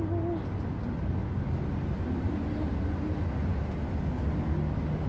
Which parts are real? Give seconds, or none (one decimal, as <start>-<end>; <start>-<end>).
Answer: 0.0-5.1